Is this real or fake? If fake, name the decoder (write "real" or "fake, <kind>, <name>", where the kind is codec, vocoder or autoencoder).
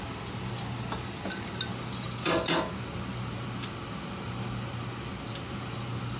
real